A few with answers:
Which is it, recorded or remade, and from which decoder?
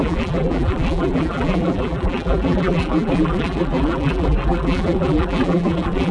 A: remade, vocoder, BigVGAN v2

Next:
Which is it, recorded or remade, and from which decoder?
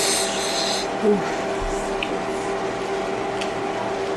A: recorded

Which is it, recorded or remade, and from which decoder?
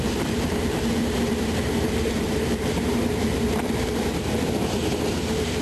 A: remade, vocoder, BigVGAN v2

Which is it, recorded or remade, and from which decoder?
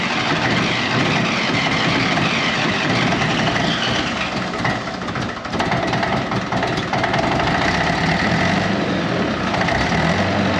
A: remade, vocoder, BigVGAN v2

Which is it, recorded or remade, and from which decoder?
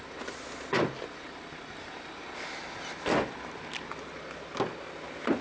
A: recorded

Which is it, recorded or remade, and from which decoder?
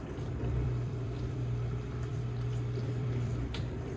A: remade, vocoder, BigVGAN v2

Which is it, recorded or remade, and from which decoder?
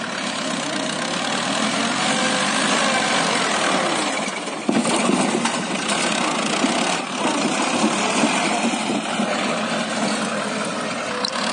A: recorded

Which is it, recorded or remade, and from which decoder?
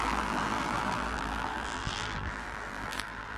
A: remade, vocoder, BigVGAN v2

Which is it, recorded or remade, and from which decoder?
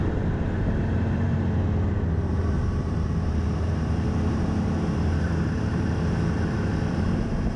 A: remade, vocoder, BigVGAN v2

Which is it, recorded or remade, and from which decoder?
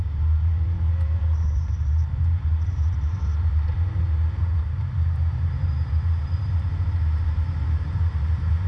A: remade, vocoder, BigVGAN v2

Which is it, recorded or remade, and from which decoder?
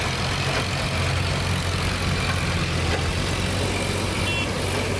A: recorded